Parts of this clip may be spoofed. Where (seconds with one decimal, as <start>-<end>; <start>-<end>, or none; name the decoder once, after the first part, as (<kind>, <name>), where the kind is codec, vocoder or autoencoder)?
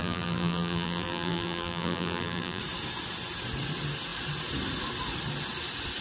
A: 0.0-2.6 (vocoder, BigVGAN v2)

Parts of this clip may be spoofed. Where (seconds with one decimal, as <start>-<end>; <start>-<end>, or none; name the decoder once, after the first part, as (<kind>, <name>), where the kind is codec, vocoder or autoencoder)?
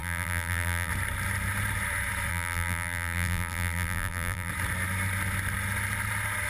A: 0.0-0.9 (vocoder, BigVGAN v2); 2.3-4.5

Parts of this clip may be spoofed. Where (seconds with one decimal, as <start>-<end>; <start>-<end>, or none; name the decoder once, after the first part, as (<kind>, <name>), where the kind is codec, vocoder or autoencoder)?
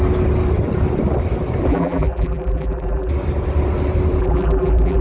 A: 1.7-3.1 (vocoder, BigVGAN v2); 4.2-5.0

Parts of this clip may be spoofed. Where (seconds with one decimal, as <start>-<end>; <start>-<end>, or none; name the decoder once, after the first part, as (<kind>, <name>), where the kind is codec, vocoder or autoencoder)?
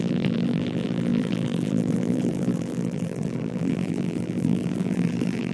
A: 0.0-5.5 (vocoder, BigVGAN v2)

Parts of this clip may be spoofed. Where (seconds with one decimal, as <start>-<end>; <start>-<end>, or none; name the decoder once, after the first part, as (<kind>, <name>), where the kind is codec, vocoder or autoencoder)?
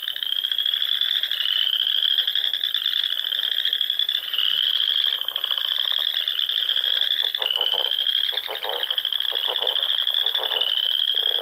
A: 0.0-4.6 (vocoder, BigVGAN v2); 6.0-7.2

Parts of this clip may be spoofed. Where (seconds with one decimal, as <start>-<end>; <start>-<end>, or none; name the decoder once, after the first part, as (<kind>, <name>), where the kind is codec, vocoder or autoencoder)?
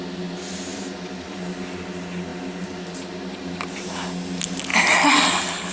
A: 0.7-1.4 (vocoder, BigVGAN v2)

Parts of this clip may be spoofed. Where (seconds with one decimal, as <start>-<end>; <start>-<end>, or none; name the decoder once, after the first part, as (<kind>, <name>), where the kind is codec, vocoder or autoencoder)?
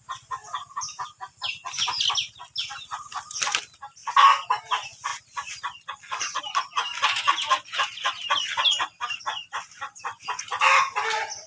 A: 5.1-6.4 (vocoder, BigVGAN v2); 6.9-10.0